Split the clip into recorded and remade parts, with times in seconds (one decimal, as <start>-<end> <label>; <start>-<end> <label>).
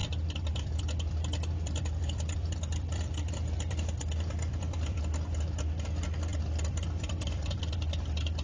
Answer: 0.0-5.0 remade; 5.0-6.3 recorded; 6.3-7.7 remade; 7.7-8.4 recorded